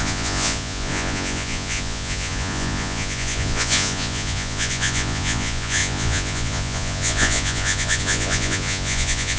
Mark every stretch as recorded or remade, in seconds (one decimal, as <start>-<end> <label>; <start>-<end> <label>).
0.0-9.4 remade